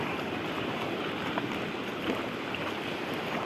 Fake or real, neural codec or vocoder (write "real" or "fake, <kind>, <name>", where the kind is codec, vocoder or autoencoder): real